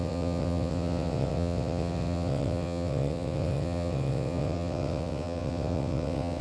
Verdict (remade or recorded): remade